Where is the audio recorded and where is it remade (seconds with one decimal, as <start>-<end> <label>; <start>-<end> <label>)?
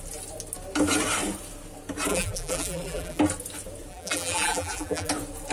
0.0-2.1 recorded; 2.1-3.2 remade; 3.2-3.9 recorded; 3.9-5.1 remade; 5.1-5.5 recorded